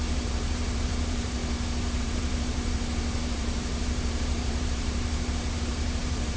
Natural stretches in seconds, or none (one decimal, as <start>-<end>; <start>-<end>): 1.4-2.0